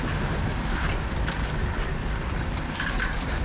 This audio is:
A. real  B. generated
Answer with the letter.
B